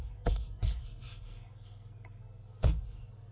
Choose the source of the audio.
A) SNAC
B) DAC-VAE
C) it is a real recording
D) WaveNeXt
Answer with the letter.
A